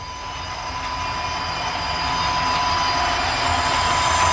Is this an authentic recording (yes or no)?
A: yes